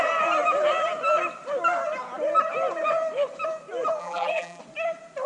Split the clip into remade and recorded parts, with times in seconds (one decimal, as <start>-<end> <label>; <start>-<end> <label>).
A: 0.0-4.0 recorded; 4.0-4.6 remade; 4.6-5.3 recorded